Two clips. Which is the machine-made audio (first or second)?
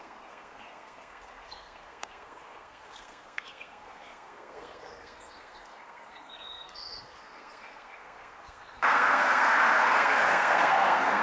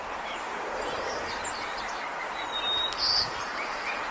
first